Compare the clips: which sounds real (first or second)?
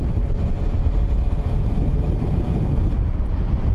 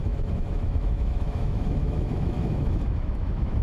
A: first